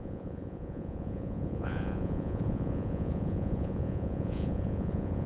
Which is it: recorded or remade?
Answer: remade